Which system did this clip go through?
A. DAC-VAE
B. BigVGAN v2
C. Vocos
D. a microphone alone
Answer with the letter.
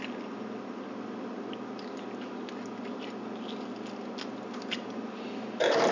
D